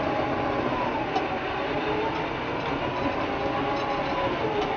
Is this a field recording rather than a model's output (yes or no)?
yes